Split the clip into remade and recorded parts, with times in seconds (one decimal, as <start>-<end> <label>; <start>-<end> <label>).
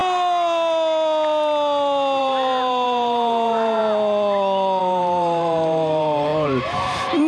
0.0-2.2 recorded; 2.2-3.8 remade; 3.8-4.8 recorded; 4.8-7.3 remade